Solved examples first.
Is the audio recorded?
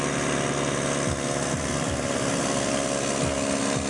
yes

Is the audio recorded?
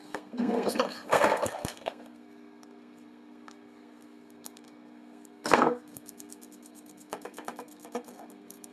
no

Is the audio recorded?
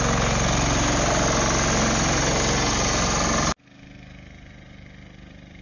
yes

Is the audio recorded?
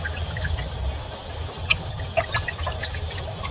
yes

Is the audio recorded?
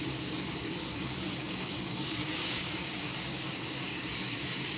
no